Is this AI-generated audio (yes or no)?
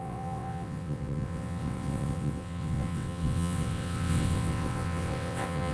yes